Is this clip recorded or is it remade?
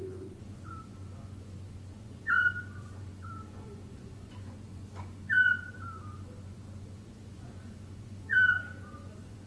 remade